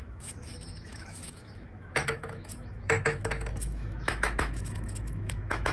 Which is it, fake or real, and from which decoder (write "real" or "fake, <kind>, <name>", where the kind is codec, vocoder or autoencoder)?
fake, autoencoder, DAC-VAE